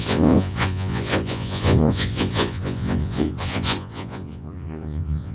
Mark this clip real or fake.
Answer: fake